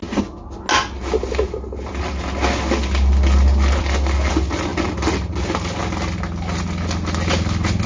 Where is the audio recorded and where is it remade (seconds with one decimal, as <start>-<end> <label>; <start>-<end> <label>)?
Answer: 0.0-7.9 recorded